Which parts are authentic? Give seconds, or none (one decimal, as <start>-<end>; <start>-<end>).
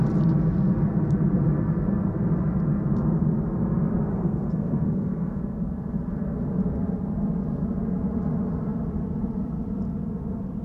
0.0-4.1; 5.4-10.6